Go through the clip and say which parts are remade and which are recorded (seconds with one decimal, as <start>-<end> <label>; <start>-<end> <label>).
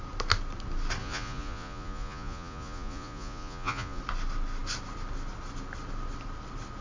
0.0-1.0 recorded; 1.0-4.0 remade; 4.0-6.8 recorded